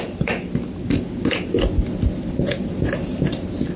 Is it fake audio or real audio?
real